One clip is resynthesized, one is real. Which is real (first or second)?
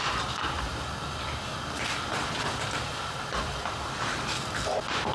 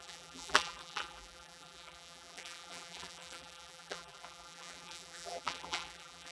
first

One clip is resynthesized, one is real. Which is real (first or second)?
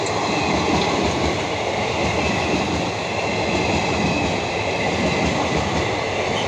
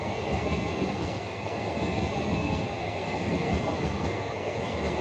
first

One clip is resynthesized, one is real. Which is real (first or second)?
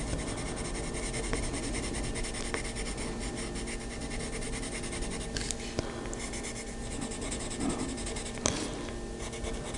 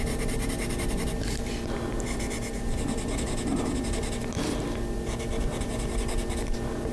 first